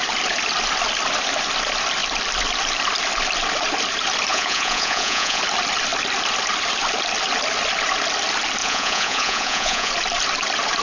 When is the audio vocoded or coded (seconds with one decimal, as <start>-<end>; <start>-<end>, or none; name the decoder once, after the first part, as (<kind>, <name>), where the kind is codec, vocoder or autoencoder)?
4.3-5.4 (vocoder, Vocos); 8.6-9.9